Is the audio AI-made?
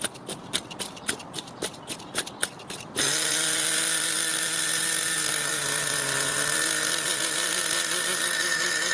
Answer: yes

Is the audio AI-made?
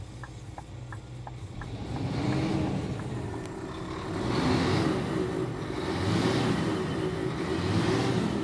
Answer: no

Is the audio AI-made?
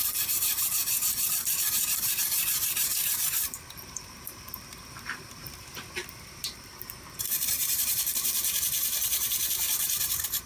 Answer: yes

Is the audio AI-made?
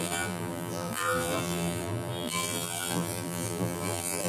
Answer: yes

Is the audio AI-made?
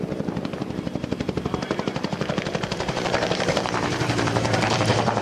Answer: yes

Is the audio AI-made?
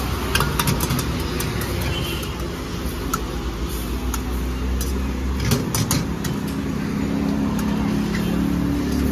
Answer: no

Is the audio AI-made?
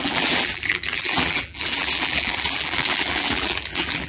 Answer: yes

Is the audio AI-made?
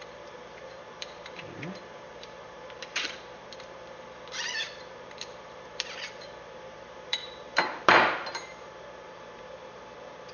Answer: yes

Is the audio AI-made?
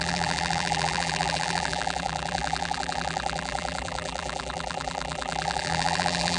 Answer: yes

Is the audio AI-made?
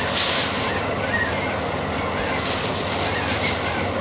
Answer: no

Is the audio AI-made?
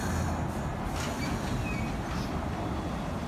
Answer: no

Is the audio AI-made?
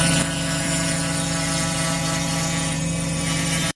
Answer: yes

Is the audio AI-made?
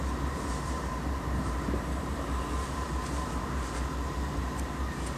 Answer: yes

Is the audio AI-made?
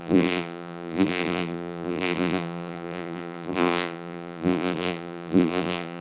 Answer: yes